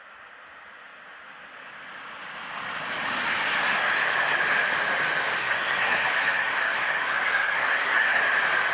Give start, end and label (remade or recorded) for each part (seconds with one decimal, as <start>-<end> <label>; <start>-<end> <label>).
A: 0.0-5.4 recorded; 5.4-8.2 remade; 8.2-8.7 recorded